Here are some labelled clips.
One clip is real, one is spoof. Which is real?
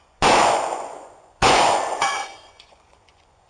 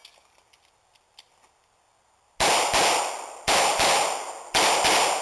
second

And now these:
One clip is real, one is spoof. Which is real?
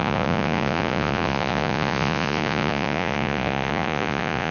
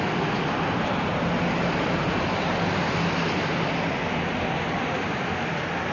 second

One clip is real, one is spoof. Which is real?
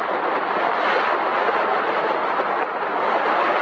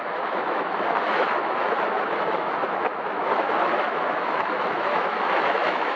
first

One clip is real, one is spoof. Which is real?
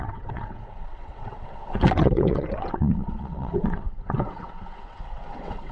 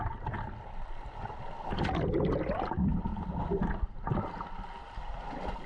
second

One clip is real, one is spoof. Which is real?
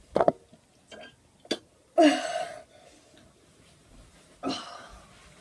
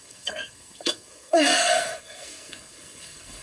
first